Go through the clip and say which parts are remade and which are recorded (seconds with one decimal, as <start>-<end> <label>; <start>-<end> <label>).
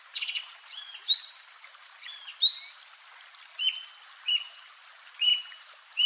0.0-2.3 remade; 2.3-4.5 recorded; 4.5-6.1 remade